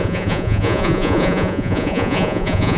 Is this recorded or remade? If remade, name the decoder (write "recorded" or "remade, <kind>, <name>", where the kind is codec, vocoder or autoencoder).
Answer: remade, vocoder, Vocos